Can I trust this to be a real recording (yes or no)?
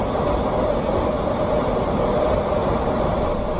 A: no